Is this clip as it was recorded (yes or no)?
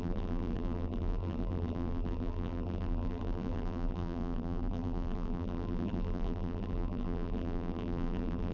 no